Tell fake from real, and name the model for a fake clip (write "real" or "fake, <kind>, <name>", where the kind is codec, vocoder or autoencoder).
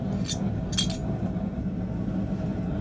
real